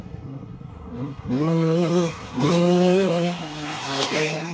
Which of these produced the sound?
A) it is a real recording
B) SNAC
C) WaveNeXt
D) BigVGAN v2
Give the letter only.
B